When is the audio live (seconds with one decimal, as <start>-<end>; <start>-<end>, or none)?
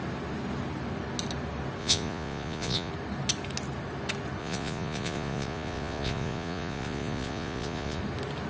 0.0-1.8; 2.9-4.4; 8.0-8.5